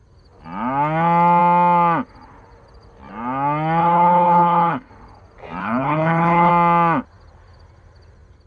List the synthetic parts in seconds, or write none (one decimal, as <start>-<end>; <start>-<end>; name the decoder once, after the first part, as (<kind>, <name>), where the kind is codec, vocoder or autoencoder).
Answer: 3.8-4.9 (codec, HILCodec); 5.6-6.5